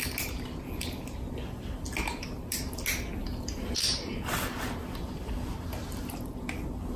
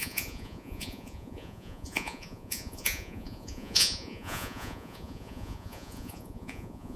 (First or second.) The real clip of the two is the first